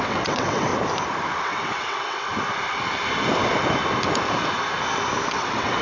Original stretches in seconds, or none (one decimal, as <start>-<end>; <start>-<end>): 0.7-1.4; 2.3-5.3

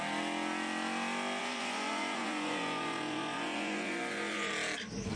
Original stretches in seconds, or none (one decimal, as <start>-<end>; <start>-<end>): 0.0-1.4; 4.5-5.2

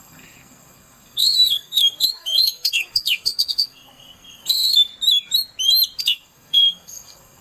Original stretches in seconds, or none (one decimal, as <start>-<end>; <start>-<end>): 4.9-6.0

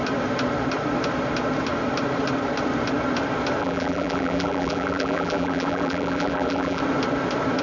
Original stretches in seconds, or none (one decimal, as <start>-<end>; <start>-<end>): 0.0-3.6; 6.8-7.6